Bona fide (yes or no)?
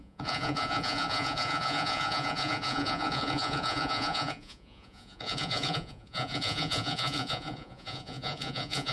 no